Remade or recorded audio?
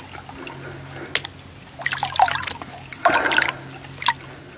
recorded